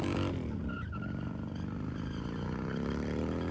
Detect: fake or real real